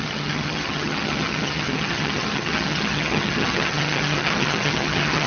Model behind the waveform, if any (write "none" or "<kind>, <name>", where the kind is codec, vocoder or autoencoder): vocoder, HiFi-GAN